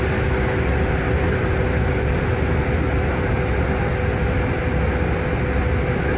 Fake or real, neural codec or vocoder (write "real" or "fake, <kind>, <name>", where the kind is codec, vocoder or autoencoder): real